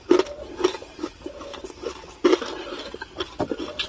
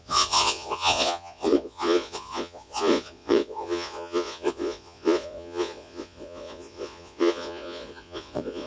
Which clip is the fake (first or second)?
second